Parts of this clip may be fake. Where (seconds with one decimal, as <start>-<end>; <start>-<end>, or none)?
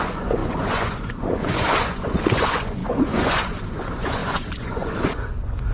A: 0.0-5.7